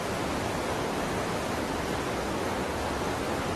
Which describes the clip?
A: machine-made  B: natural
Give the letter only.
B